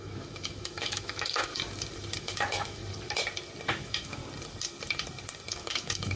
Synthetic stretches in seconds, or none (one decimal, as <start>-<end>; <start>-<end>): 0.0-1.5; 2.2-2.8; 3.7-4.2; 5.5-6.2